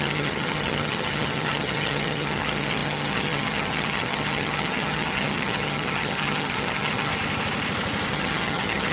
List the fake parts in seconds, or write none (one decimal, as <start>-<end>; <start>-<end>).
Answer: 0.0-7.1; 8.1-8.9